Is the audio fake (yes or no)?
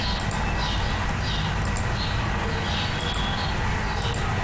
no